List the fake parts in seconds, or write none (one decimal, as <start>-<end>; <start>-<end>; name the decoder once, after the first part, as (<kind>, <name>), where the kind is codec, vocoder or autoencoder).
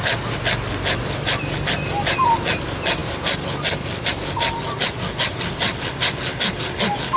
none